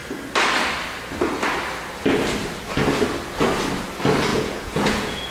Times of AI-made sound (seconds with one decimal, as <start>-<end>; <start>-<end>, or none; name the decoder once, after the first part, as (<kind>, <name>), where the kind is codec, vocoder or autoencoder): 4.3-5.3 (vocoder, Vocos)